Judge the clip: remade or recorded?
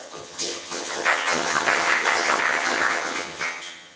remade